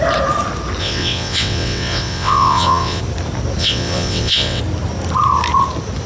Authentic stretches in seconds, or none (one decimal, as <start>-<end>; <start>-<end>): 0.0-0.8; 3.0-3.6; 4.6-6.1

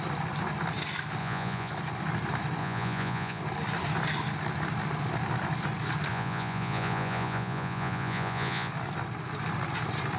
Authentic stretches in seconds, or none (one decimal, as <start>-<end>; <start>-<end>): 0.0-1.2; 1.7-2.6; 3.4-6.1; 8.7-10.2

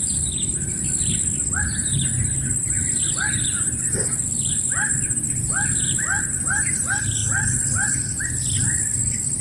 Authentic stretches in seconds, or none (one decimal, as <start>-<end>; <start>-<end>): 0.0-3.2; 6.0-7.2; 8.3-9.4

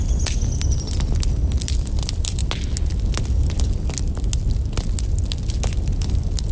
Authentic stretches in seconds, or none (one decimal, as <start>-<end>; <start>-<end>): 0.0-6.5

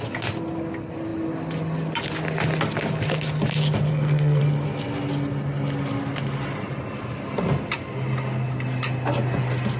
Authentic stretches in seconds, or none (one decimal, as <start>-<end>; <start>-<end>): 0.0-3.9; 4.4-9.8